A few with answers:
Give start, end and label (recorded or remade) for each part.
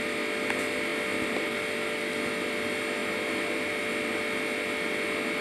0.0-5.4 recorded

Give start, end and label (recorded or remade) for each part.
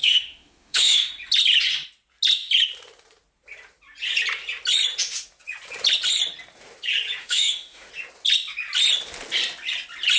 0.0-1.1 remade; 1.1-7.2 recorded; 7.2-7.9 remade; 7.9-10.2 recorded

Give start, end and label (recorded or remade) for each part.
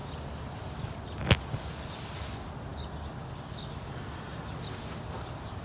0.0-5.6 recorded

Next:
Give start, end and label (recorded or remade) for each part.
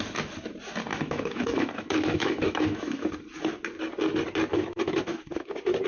0.0-0.9 recorded; 0.9-3.1 remade; 3.1-4.5 recorded; 4.5-5.5 remade; 5.5-5.9 recorded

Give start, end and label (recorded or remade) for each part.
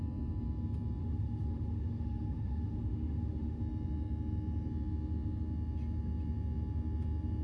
0.0-1.0 recorded; 1.0-3.6 remade; 3.6-7.4 recorded